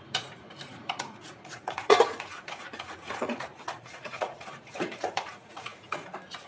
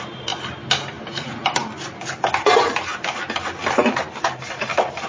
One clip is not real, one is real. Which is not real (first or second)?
first